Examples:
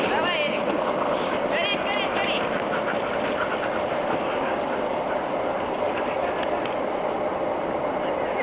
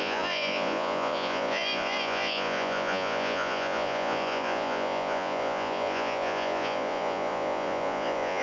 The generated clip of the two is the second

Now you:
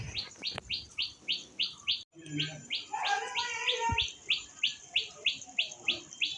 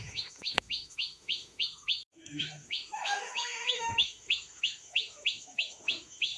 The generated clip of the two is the second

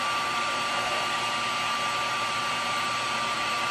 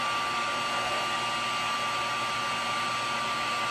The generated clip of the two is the first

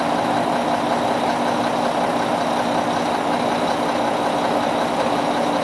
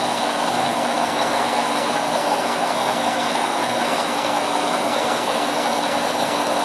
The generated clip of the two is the second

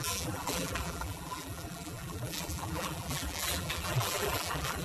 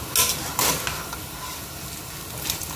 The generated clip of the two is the first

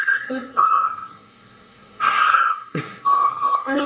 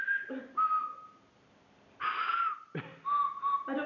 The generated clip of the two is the first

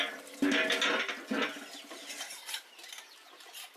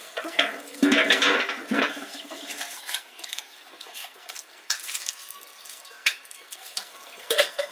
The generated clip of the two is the second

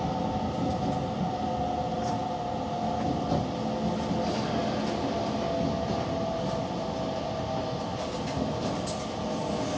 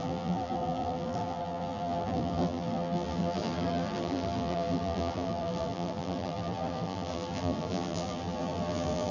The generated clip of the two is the second